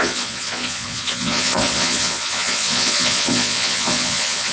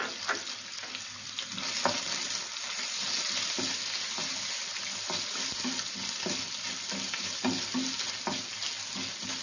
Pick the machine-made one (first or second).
first